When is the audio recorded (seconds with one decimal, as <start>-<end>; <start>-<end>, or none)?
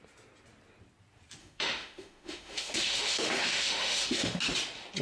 0.0-1.4; 4.4-5.0